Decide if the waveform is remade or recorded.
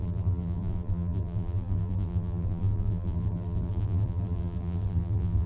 remade